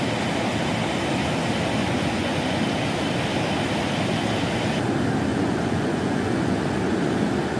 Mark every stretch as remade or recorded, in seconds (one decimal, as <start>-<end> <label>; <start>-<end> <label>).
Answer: 0.0-1.8 recorded; 1.8-2.6 remade; 2.6-5.3 recorded; 5.3-7.6 remade